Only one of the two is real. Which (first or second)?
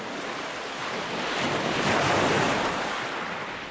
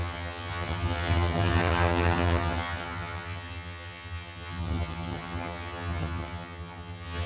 first